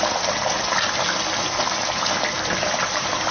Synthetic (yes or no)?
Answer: no